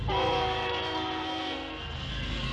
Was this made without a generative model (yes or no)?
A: no